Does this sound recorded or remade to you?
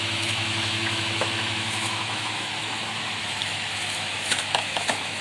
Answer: remade